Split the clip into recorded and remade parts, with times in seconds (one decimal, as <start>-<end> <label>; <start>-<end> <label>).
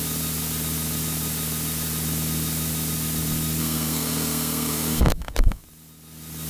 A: 0.0-3.6 recorded; 3.6-5.6 remade; 5.6-6.5 recorded